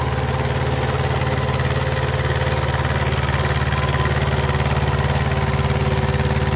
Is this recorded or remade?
recorded